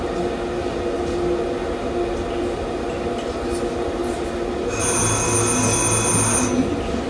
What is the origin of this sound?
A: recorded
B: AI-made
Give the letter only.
A